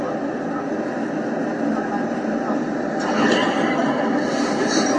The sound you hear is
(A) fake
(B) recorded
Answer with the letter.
B